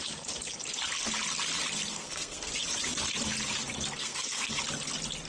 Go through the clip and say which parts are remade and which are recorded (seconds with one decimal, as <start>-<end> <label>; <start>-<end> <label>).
0.0-1.9 recorded; 1.9-2.5 remade; 2.5-4.0 recorded; 4.0-4.6 remade; 4.6-5.3 recorded